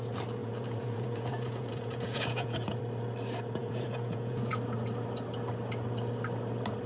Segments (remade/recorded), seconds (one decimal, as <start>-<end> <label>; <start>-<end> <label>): 0.0-0.4 recorded; 0.4-2.8 remade; 2.8-3.6 recorded; 3.6-4.5 remade; 4.5-6.9 recorded